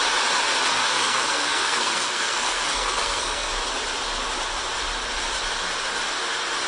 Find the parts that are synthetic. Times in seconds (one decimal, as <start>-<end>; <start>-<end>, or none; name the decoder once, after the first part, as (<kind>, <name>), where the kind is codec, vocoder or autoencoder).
0.8-3.5 (codec, SNAC)